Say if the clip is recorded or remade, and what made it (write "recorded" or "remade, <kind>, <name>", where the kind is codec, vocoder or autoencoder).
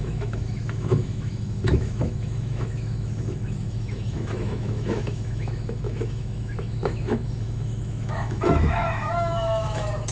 remade, autoencoder, DAC-VAE